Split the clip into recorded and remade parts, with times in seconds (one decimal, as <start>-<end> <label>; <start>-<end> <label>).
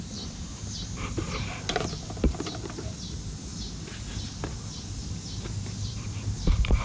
0.0-3.5 remade; 3.5-5.1 recorded; 5.1-6.8 remade